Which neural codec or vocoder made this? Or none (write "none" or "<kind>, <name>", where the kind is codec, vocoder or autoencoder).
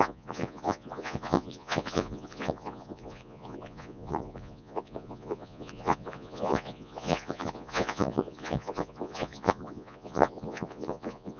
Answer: vocoder, Vocos